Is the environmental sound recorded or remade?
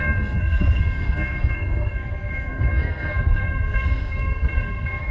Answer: remade